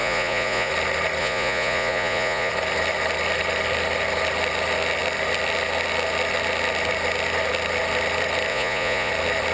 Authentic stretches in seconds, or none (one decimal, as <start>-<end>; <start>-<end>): 0.7-1.2; 2.5-8.5; 9.1-9.5

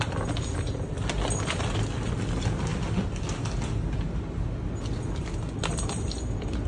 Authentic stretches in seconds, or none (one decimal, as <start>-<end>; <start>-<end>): 0.0-6.7

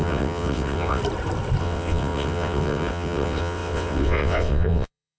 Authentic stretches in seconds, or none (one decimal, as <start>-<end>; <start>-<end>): 1.0-1.6

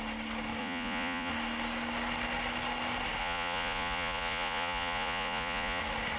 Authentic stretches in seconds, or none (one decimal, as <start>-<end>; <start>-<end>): 0.0-0.6; 1.3-3.2; 5.8-6.2

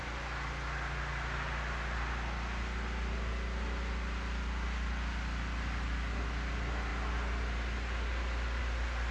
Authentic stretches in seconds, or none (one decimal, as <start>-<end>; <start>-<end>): 0.0-9.1

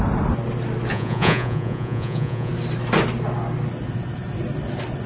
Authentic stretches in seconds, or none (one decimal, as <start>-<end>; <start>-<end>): 0.0-0.9; 2.5-5.1

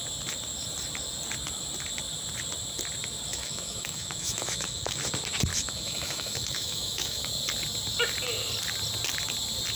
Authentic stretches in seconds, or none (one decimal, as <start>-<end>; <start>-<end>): 0.0-3.3; 5.0-5.5; 7.3-9.8